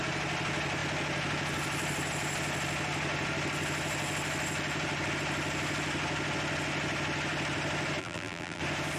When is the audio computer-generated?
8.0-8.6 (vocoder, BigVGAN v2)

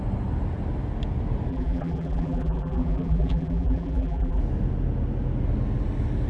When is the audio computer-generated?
1.5-4.4 (vocoder, BigVGAN v2)

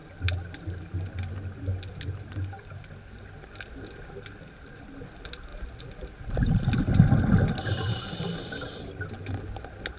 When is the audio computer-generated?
none